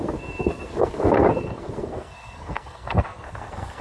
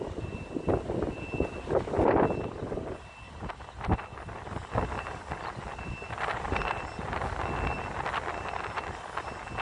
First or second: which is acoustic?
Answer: second